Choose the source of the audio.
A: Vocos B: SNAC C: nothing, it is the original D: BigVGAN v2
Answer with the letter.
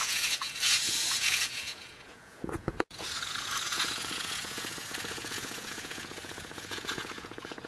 A